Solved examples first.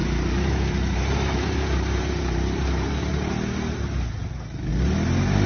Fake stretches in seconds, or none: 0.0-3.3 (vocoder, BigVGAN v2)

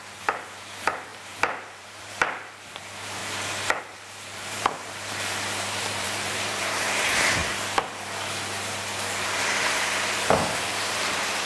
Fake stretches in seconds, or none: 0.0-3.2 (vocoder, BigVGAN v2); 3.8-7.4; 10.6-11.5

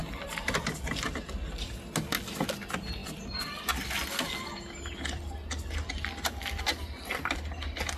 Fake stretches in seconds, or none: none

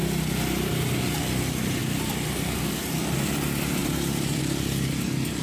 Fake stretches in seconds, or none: 1.8-2.6 (vocoder, BigVGAN v2); 3.8-4.4